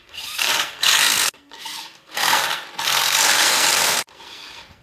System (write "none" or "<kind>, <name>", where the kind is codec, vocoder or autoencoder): codec, SNAC